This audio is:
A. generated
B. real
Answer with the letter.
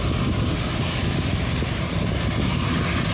B